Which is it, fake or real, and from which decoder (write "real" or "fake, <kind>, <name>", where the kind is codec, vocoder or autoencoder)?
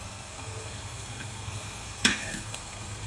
fake, codec, SNAC